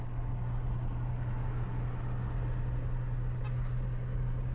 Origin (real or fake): real